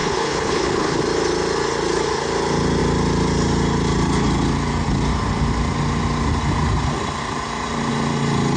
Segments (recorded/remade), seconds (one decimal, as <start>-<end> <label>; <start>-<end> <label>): 0.0-1.0 remade; 1.0-8.6 recorded